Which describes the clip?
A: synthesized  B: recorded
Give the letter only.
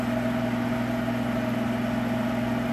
B